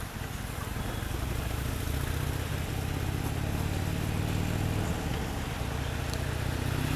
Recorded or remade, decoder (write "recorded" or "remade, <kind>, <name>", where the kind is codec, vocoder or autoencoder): recorded